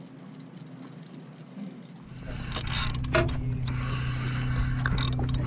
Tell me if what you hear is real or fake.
real